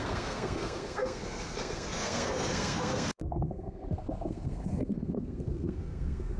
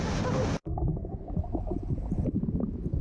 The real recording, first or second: second